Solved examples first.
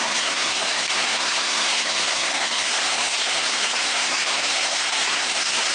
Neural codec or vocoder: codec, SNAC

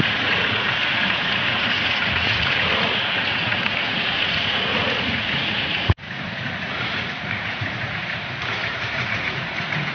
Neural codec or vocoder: vocoder, Vocos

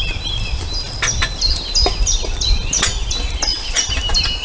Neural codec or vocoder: none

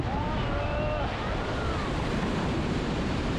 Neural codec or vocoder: none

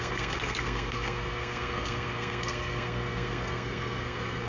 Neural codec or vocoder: codec, SNAC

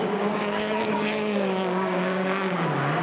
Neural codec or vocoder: codec, DAC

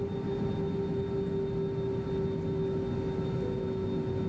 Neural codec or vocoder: none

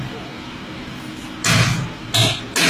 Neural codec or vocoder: none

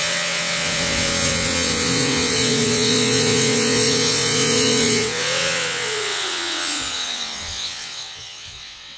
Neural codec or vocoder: vocoder, WaveNeXt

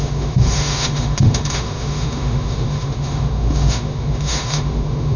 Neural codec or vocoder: autoencoder, DAC-VAE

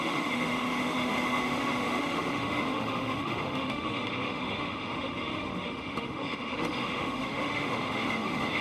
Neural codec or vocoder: autoencoder, DAC-VAE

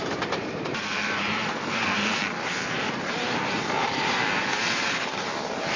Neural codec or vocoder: vocoder, BigVGAN v2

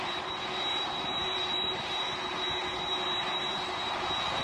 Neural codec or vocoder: vocoder, BigVGAN v2